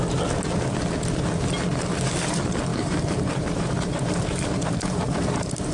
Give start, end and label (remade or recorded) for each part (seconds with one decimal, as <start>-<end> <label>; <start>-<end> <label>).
0.0-2.7 recorded; 2.7-5.7 remade